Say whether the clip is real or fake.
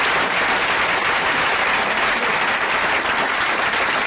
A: real